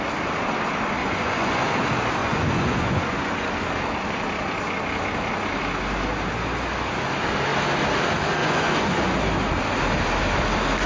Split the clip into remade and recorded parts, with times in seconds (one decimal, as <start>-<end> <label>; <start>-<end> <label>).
0.0-1.0 recorded; 1.0-1.6 remade; 1.6-2.2 recorded; 2.2-3.3 remade; 3.3-8.4 recorded; 8.4-9.2 remade; 9.2-10.9 recorded